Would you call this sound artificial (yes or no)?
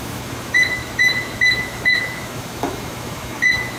yes